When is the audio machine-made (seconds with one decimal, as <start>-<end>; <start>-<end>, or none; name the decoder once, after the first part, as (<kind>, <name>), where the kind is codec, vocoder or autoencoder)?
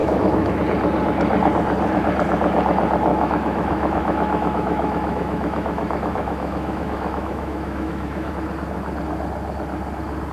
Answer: 0.0-0.6 (autoencoder, DAC-VAE); 3.1-8.3